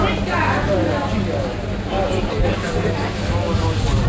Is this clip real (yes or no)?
yes